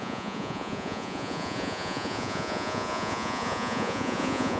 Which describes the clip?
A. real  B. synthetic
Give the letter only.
B